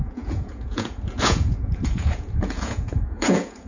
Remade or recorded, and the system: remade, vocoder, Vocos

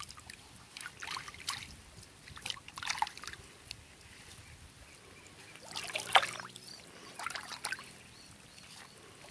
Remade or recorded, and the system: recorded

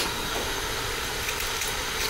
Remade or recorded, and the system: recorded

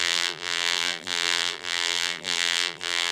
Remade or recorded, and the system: remade, vocoder, BigVGAN v2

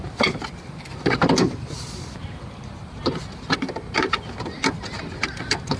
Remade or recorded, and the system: recorded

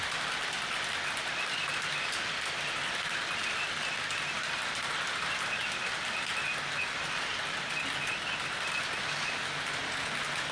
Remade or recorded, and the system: recorded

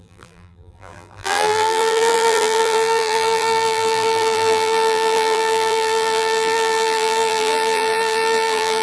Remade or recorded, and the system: remade, vocoder, BigVGAN v2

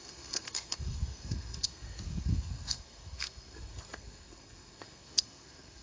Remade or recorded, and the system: remade, codec, SNAC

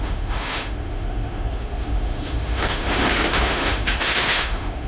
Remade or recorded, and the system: remade, autoencoder, DAC-VAE